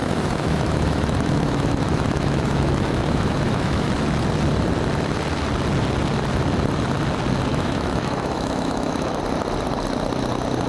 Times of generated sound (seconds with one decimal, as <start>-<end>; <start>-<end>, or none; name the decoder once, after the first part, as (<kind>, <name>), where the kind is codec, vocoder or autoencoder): 0.0-3.9 (autoencoder, DAC-VAE); 7.5-9.2